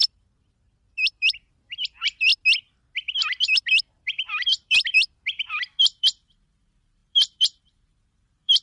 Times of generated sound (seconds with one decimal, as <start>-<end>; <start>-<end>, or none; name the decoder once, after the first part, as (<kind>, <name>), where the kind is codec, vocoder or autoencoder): 0.0-2.3 (vocoder, BigVGAN v2); 3.8-8.6